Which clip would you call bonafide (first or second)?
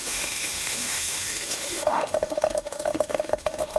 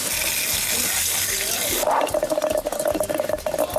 second